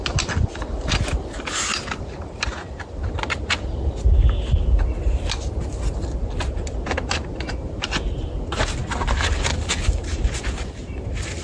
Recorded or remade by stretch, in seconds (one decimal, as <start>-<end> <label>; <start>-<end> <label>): 0.0-11.4 recorded